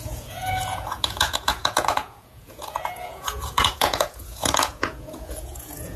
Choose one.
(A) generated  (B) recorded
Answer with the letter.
A